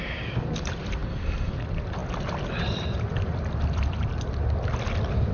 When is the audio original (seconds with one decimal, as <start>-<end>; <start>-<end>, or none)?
0.0-5.3